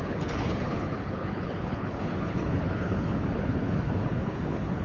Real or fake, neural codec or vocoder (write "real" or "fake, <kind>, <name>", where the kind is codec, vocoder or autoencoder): fake, codec, HILCodec